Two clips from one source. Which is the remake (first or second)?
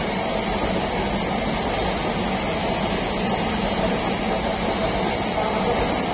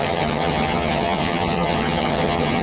second